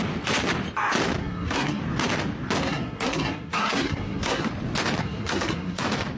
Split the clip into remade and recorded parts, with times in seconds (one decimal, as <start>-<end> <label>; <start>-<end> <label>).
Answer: 0.0-1.2 recorded; 1.2-1.8 remade; 1.8-2.6 recorded; 2.6-4.5 remade; 4.5-5.0 recorded; 5.0-5.8 remade; 5.8-6.2 recorded